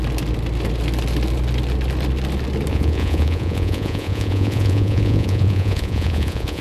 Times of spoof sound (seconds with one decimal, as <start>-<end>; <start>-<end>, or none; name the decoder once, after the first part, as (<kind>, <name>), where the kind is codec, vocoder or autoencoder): 2.7-6.6 (vocoder, Vocos)